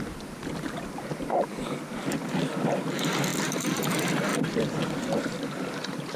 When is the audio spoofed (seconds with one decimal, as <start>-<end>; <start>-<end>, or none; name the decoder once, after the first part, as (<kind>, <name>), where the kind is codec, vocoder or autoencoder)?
3.3-3.9 (vocoder, BigVGAN v2); 4.3-6.2